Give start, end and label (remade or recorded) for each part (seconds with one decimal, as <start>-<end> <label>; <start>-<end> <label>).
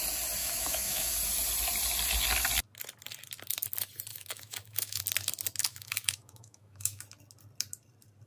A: 0.0-0.4 recorded; 0.4-1.1 remade; 1.1-4.1 recorded; 4.1-5.0 remade; 5.0-5.6 recorded; 5.6-7.0 remade; 7.0-8.3 recorded